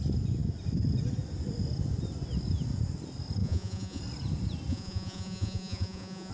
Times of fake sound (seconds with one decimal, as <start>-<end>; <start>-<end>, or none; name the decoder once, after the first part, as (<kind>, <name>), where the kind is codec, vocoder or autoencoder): 3.4-4.0 (vocoder, Vocos); 4.7-6.3